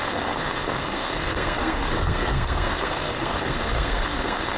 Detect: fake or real fake